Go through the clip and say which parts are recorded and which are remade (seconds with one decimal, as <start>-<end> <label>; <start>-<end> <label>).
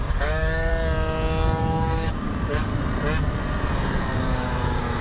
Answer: 0.0-0.7 remade; 0.7-1.6 recorded; 1.6-2.7 remade; 2.7-4.2 recorded; 4.2-5.0 remade